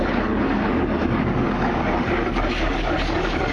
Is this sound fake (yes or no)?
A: yes